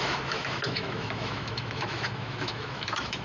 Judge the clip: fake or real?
fake